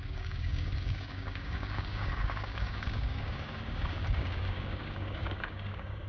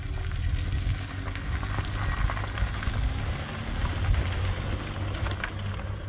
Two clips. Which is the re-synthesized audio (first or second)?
first